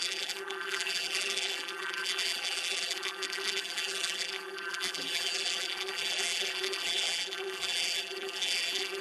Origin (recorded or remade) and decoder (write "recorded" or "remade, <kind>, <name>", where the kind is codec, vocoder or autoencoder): remade, vocoder, BigVGAN v2